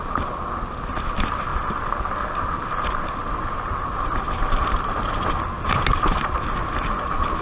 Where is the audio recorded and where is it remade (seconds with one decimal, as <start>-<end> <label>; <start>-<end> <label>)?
0.0-7.4 recorded